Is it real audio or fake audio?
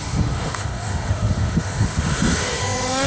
fake